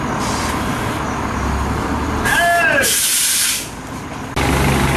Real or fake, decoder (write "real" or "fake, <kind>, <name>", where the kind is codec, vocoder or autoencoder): real